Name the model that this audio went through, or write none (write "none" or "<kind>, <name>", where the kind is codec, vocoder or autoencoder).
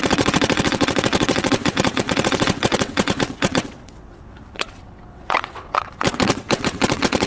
vocoder, WaveNeXt